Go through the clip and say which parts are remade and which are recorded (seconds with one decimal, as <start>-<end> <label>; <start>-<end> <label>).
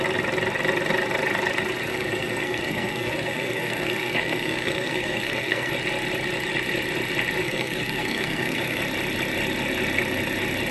0.0-1.9 recorded; 1.9-5.7 remade; 5.7-7.4 recorded; 7.4-8.8 remade; 8.8-10.7 recorded